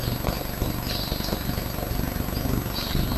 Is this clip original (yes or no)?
yes